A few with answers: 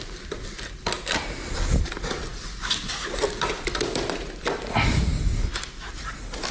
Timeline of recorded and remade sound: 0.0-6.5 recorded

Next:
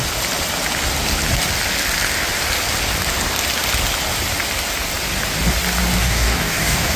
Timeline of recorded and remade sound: 0.0-6.0 recorded; 6.0-7.0 remade

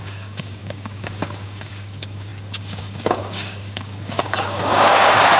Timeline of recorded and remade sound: 0.0-5.4 remade

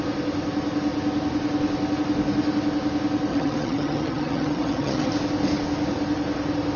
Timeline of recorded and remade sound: 0.0-3.3 recorded; 3.3-5.1 remade; 5.1-6.8 recorded